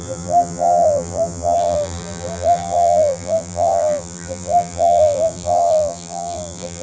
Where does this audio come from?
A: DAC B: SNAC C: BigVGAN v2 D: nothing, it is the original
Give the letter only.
C